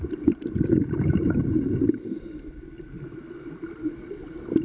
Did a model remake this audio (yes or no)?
no